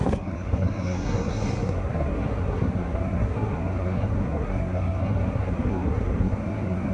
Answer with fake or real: fake